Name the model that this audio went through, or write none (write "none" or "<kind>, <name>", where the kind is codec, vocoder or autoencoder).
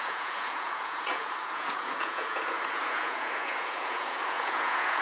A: vocoder, Vocos